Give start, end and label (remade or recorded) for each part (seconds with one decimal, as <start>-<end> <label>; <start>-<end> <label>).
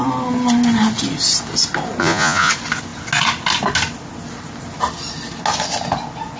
0.0-2.0 recorded; 2.0-2.5 remade; 2.5-6.4 recorded